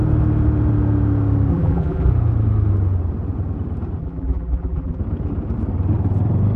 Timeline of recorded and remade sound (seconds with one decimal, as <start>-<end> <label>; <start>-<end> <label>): 0.0-1.5 recorded; 1.5-2.1 remade; 2.1-4.0 recorded; 4.0-5.0 remade; 5.0-6.6 recorded